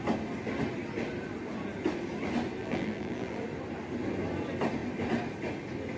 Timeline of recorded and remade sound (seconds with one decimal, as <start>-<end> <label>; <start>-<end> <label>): 0.0-2.6 recorded; 2.6-3.4 remade; 3.4-6.0 recorded